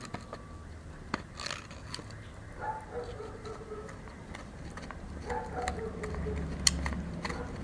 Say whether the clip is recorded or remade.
recorded